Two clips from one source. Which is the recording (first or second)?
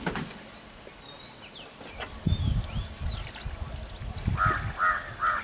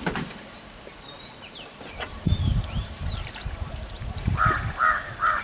first